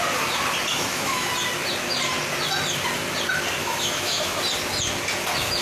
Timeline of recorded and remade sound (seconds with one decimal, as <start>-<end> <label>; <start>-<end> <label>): 0.0-0.7 recorded; 0.7-1.3 remade; 1.3-3.6 recorded; 3.6-4.4 remade; 4.4-5.6 recorded